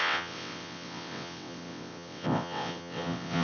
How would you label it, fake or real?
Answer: fake